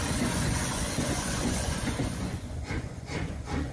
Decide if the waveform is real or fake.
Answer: fake